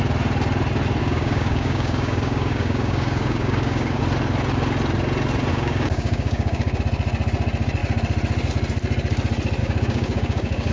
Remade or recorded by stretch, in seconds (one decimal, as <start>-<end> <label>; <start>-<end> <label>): 0.0-1.0 recorded; 1.0-4.0 remade; 4.0-5.5 recorded; 5.5-6.8 remade; 6.8-9.6 recorded; 9.6-10.7 remade